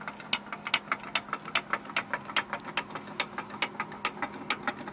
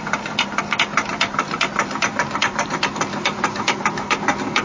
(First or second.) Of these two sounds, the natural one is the first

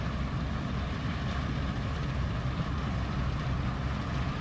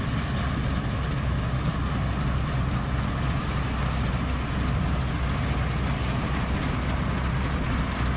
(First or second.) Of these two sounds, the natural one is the second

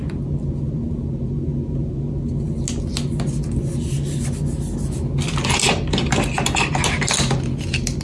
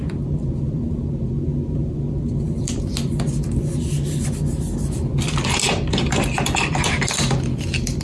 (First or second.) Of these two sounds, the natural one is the first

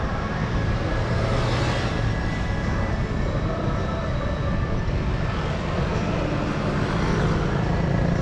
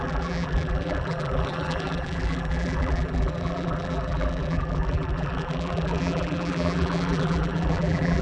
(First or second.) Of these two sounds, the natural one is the first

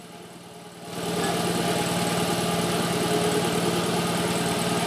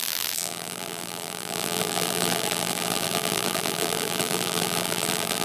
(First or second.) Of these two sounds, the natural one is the first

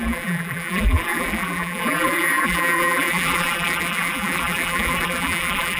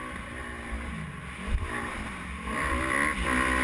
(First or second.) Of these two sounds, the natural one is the second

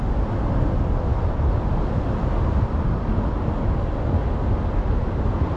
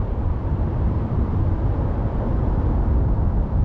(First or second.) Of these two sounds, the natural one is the first